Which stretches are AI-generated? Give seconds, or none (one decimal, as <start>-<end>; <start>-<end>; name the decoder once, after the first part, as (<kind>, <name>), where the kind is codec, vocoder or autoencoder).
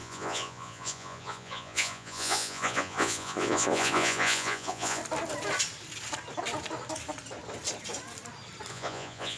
0.0-5.0 (vocoder, Vocos); 8.7-9.4